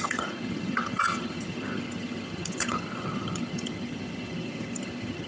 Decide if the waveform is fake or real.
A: fake